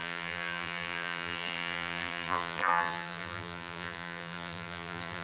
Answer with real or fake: fake